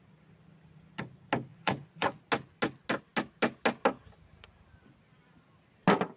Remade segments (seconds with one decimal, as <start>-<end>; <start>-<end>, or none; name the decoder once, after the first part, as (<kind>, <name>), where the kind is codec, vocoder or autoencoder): 1.5-2.2 (vocoder, Vocos)